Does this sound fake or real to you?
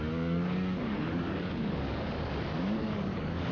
fake